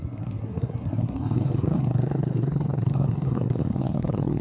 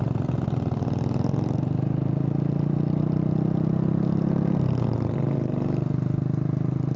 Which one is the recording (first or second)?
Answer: second